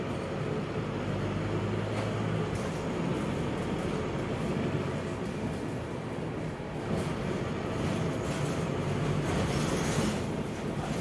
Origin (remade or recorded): recorded